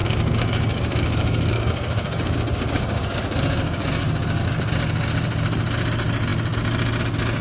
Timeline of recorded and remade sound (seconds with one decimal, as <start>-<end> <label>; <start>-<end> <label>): 0.0-4.4 remade; 4.4-7.4 recorded